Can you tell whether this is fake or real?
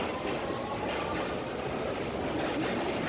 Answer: real